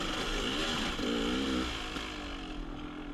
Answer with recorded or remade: recorded